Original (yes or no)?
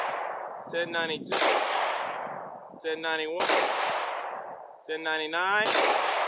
yes